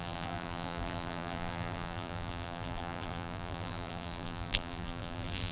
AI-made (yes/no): yes